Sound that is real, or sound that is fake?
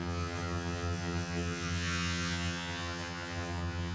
fake